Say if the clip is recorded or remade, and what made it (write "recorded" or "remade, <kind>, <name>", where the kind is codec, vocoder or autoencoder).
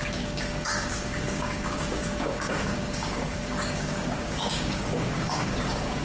remade, codec, DAC